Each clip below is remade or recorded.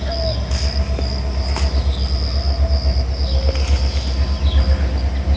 recorded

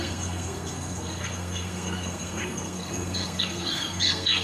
remade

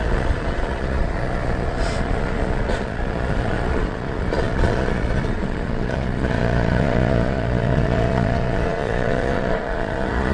remade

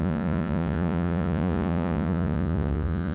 remade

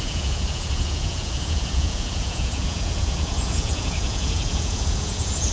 remade